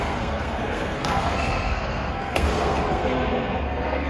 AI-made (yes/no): yes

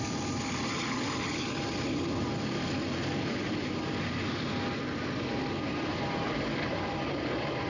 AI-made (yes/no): no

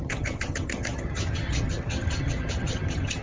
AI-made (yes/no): yes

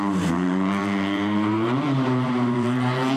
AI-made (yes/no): yes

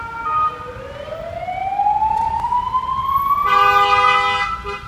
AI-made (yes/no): no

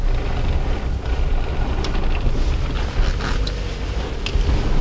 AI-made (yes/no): no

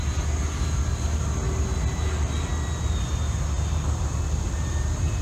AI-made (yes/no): no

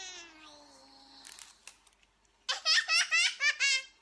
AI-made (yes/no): no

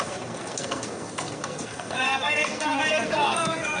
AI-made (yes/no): yes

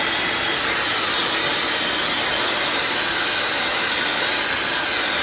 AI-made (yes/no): no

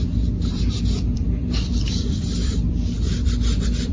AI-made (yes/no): yes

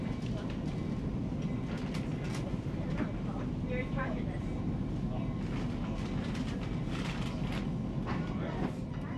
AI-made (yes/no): no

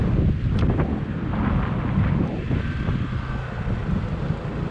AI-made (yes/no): no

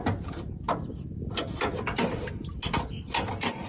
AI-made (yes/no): no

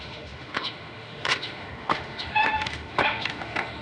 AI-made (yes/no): yes